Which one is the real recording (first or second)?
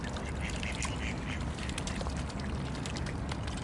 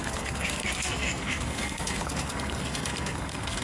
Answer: first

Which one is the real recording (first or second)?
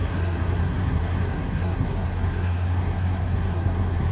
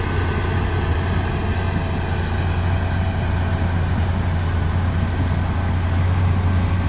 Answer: second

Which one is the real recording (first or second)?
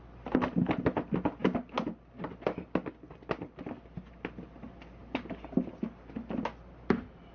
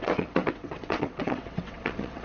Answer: first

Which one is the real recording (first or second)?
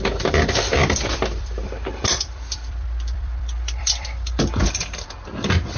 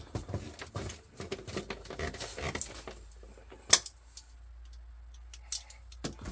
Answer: second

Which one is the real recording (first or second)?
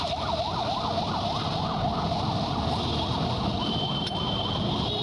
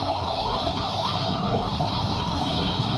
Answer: first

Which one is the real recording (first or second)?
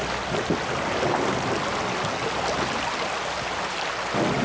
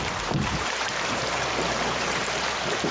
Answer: first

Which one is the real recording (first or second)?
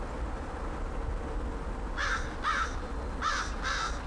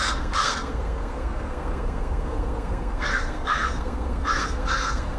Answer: first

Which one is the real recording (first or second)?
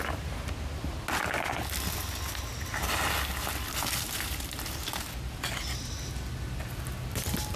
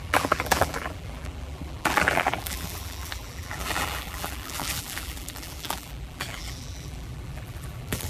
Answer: first